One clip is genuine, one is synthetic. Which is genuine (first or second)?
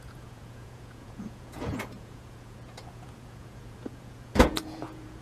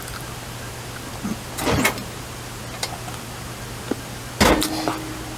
second